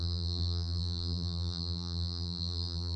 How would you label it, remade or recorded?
remade